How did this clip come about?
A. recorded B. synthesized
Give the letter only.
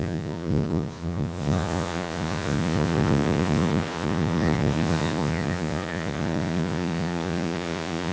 B